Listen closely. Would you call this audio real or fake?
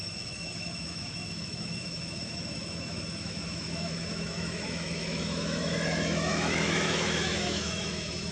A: fake